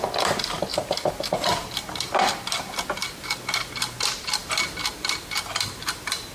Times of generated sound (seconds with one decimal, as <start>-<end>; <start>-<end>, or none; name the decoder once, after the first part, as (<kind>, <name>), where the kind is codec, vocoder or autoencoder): 0.7-2.7 (vocoder, BigVGAN v2); 4.4-5.4